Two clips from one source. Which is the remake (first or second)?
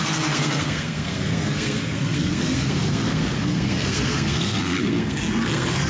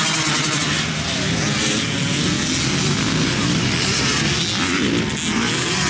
first